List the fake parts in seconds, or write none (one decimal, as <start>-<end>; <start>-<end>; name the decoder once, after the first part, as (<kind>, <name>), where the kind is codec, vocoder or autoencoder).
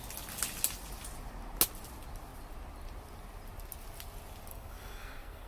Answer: 4.5-5.5 (codec, SNAC)